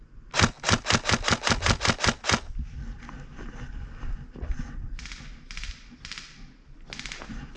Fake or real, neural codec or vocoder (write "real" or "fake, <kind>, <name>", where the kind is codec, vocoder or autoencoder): real